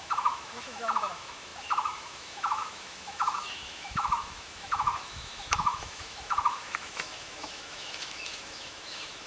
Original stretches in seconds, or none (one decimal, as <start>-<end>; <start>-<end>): none